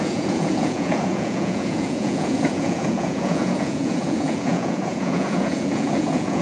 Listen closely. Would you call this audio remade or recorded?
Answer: remade